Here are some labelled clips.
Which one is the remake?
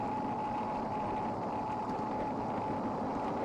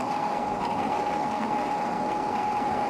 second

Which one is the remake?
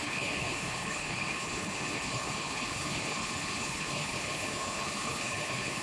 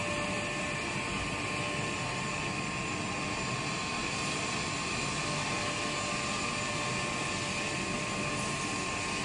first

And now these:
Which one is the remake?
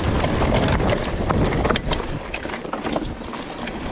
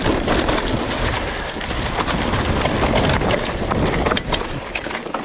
first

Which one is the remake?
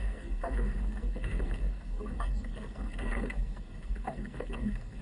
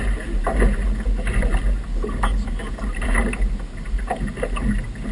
first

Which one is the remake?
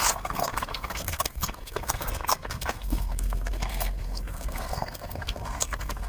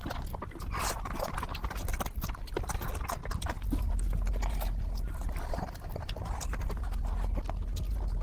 first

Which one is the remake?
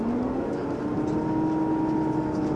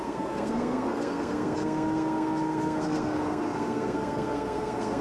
second